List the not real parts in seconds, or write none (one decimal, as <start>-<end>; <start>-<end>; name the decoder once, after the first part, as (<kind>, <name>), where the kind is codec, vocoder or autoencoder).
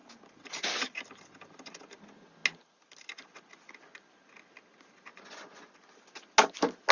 5.1-5.9 (vocoder, Vocos)